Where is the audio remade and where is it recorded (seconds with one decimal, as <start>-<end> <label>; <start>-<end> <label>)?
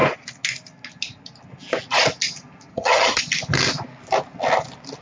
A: 0.0-2.7 recorded; 2.7-3.2 remade; 3.2-5.0 recorded